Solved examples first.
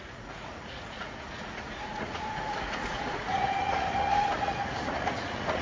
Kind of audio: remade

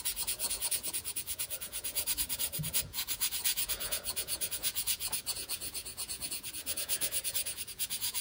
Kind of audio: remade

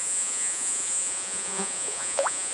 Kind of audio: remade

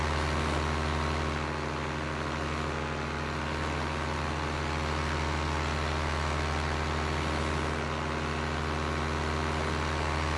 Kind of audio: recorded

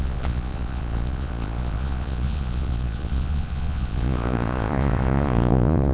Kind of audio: remade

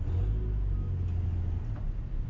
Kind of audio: recorded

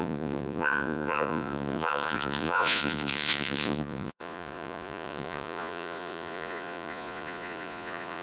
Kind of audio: remade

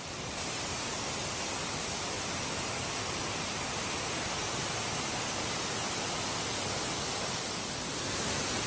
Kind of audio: recorded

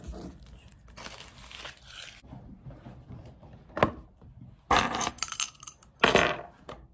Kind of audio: recorded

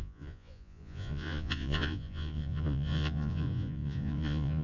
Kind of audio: remade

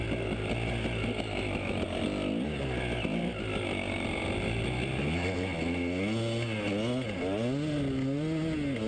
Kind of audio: recorded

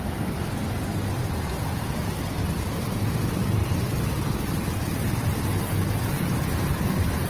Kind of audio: recorded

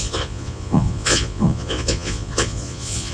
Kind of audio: remade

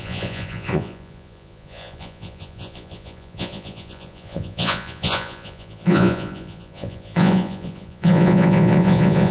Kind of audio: remade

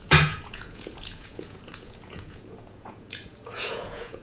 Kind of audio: remade